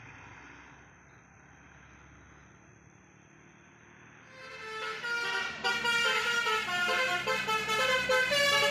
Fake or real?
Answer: real